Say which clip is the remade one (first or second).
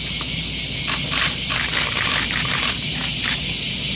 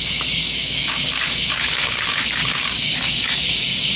second